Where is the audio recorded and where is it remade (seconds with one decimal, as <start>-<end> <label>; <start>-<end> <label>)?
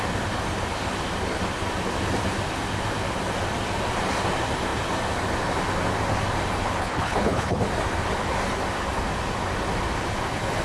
0.0-6.8 recorded; 6.8-7.6 remade; 7.6-10.6 recorded